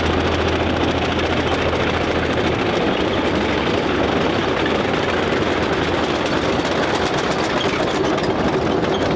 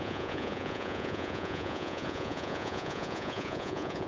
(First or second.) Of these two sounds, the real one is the first